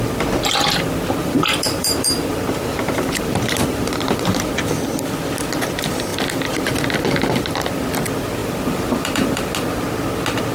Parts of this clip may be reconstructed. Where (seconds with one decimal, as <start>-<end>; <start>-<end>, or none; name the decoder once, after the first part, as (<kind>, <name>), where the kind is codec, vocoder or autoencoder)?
1.2-4.5 (vocoder, BigVGAN v2); 8.4-9.5